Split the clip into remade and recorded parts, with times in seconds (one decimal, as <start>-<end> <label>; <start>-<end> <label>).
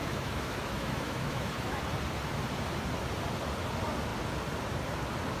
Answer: 0.0-1.8 remade; 1.8-5.4 recorded